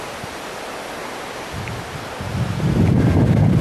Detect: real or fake real